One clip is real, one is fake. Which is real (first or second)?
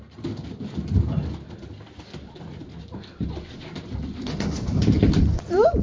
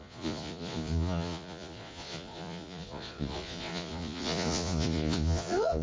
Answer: first